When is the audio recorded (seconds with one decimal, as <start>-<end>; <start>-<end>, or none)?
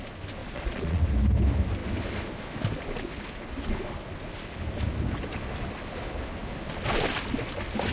0.0-0.4; 1.0-7.9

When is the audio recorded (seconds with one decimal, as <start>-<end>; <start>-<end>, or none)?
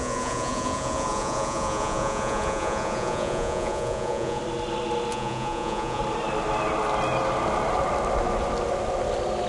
4.4-5.1; 6.0-9.5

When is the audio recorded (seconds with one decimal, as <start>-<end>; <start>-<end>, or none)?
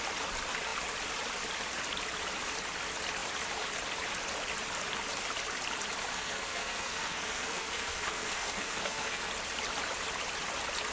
0.0-6.1; 9.3-10.9